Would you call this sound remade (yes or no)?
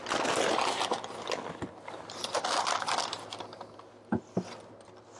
no